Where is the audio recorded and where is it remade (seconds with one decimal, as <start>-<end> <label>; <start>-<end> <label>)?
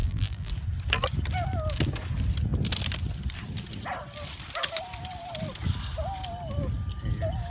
0.0-0.5 remade; 0.5-7.5 recorded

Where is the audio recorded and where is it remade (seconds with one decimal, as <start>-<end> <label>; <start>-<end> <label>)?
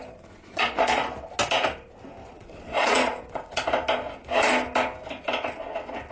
0.0-1.0 remade; 1.0-2.2 recorded; 2.2-3.6 remade; 3.6-6.1 recorded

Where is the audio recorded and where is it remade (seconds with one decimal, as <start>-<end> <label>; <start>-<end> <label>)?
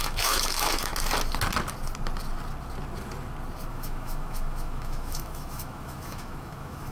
0.0-0.9 remade; 0.9-3.7 recorded; 3.7-6.9 remade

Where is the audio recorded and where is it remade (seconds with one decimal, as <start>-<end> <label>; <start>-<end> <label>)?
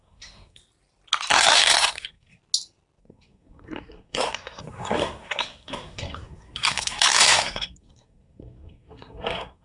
0.0-0.6 remade; 0.6-1.3 recorded; 1.3-2.4 remade; 2.4-3.0 recorded; 3.0-9.6 remade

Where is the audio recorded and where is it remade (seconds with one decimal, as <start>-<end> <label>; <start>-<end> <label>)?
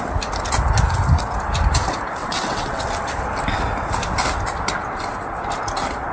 0.0-2.2 recorded; 2.2-2.8 remade; 2.8-6.1 recorded